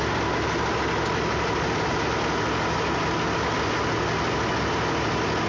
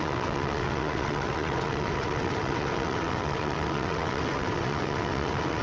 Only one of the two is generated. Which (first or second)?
second